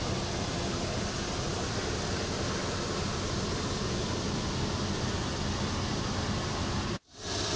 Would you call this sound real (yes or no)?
yes